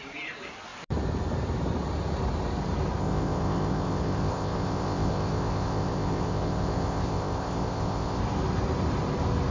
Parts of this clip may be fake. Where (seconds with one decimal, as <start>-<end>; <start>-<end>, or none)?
3.0-8.2